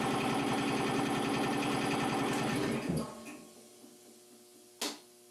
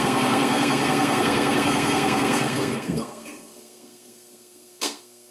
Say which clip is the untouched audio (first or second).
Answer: first